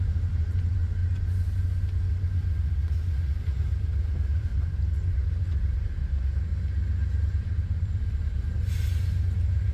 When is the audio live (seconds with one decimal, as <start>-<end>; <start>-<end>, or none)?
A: 1.0-3.4; 4.5-5.1; 6.5-7.2